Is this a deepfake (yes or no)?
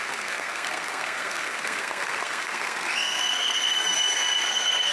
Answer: yes